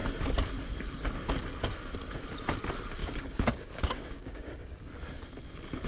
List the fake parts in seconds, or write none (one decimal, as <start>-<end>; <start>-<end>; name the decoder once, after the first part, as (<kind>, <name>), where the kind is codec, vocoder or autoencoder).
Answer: 3.0-4.9 (codec, DAC)

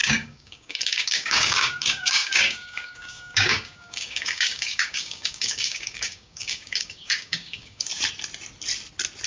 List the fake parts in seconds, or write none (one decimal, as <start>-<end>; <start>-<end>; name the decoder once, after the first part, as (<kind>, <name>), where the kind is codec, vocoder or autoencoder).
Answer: 0.0-7.9 (codec, DAC)

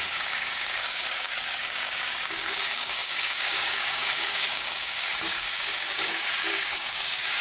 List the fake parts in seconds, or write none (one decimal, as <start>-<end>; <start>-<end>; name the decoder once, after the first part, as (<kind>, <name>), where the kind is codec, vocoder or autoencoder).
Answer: 0.0-7.4 (codec, DAC)

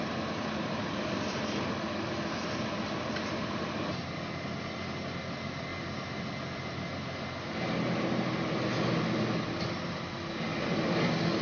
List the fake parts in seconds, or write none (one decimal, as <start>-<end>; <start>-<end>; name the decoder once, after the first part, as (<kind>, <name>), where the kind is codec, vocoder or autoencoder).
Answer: none

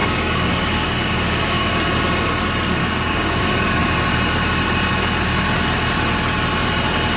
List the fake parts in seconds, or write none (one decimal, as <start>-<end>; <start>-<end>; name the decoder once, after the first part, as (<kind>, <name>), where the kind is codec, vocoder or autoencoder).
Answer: 0.0-1.7 (codec, DAC); 2.8-3.4

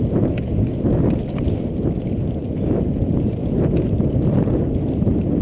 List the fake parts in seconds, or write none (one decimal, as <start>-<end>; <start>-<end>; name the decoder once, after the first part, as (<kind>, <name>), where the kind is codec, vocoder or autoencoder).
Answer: none

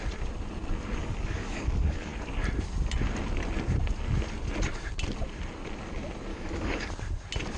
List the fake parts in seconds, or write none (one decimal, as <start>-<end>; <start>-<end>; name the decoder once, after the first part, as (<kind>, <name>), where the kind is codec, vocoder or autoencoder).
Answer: 1.0-2.1 (codec, DAC); 6.3-6.9

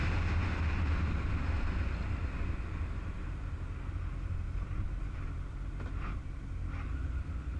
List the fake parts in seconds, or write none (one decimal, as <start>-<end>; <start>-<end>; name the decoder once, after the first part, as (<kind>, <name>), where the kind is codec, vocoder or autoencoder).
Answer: none